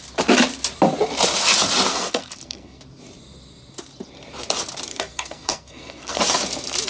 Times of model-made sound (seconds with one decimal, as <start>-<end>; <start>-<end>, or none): 1.9-2.8; 4.9-6.2